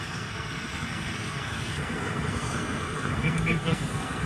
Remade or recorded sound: remade